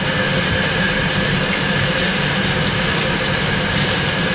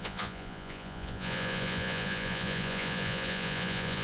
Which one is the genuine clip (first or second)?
first